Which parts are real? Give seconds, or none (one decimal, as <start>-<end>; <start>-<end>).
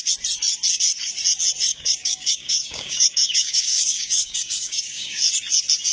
0.0-1.7; 5.2-5.9